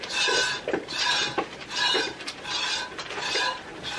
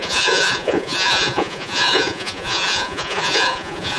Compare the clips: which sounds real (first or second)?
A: first